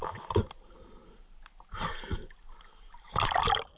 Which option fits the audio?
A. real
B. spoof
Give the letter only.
A